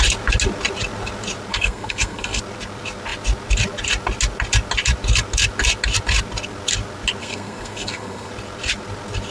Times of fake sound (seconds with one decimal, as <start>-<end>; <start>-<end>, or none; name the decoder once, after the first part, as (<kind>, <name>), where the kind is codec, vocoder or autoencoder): 1.5-2.4 (codec, SNAC); 7.2-8.3